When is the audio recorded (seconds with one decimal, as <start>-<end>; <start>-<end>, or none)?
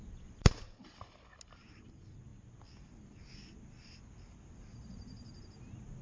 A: 0.0-4.7; 5.4-6.0